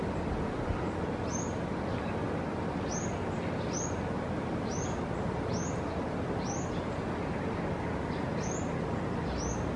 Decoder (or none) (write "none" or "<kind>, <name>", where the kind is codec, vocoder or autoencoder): none